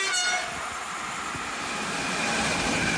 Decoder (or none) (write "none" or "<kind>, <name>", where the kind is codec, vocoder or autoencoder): none